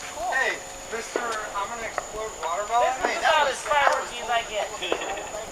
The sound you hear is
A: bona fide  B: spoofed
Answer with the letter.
A